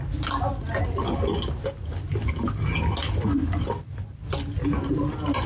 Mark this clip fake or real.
real